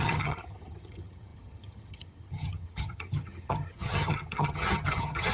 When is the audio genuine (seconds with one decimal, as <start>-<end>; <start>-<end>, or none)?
none